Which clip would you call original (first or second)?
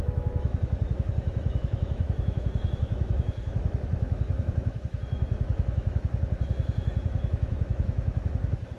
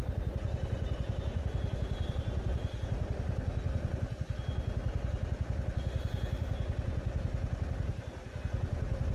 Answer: second